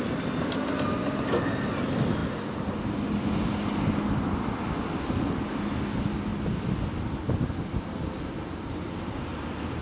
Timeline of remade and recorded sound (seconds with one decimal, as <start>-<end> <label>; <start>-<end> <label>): 0.0-9.8 recorded